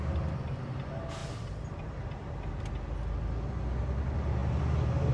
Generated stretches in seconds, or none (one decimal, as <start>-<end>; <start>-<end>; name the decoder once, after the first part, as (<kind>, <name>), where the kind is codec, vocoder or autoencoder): none